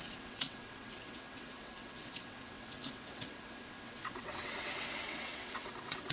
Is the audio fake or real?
fake